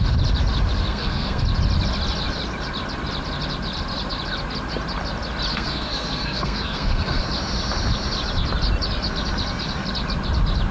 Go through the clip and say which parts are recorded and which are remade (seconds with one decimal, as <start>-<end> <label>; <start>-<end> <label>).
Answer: 0.0-0.9 recorded; 0.9-1.4 remade; 1.4-5.5 recorded; 5.5-7.2 remade; 7.2-10.7 recorded